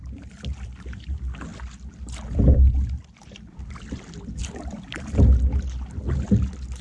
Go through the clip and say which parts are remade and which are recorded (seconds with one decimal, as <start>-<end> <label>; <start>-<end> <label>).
0.0-6.8 recorded